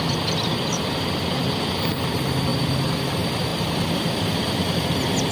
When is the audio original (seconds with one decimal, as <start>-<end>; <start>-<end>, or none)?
0.0-5.3